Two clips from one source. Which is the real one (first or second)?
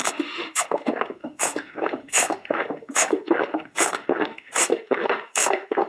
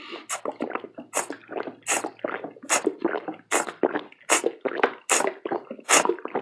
second